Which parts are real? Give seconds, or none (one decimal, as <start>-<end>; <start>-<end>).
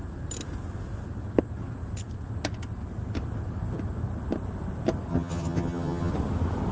0.0-5.1; 6.1-6.7